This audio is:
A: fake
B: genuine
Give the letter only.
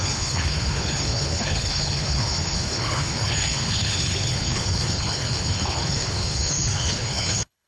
A